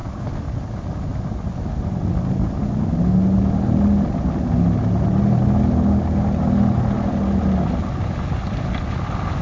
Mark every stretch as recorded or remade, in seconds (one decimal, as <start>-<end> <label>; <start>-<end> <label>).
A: 0.0-9.4 recorded